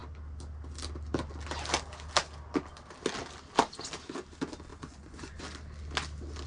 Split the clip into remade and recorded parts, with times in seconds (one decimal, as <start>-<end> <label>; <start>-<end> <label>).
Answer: 0.0-4.7 recorded; 4.7-5.4 remade; 5.4-6.5 recorded

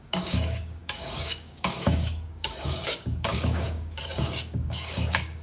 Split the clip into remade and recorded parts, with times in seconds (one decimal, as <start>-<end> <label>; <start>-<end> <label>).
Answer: 0.0-5.4 remade

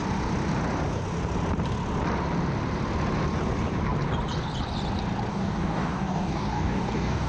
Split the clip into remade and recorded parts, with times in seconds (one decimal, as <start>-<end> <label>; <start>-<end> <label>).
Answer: 0.0-5.3 recorded; 5.3-7.3 remade